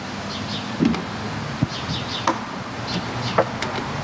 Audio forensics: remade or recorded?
recorded